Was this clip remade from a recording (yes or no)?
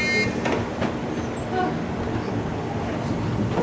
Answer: no